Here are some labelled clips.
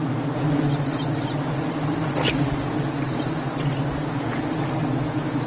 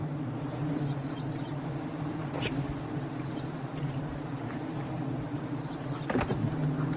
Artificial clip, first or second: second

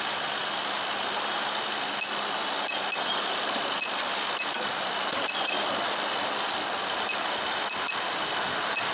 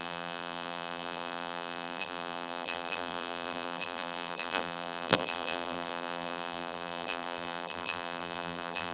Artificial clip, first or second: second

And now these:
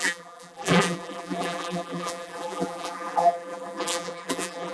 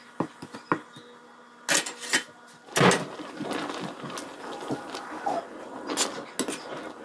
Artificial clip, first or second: first